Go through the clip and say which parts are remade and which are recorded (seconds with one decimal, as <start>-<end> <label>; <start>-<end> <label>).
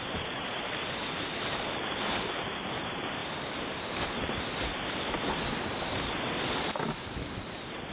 0.0-3.2 remade; 3.2-7.9 recorded